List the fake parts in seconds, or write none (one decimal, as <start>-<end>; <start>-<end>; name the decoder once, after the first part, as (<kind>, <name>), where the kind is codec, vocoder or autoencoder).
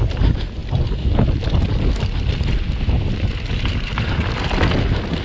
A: none